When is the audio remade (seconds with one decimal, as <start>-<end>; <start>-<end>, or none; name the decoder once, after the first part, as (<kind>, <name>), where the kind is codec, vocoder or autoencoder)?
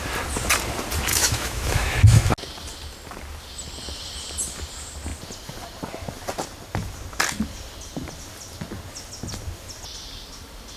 1.1-2.3 (autoencoder, DAC-VAE)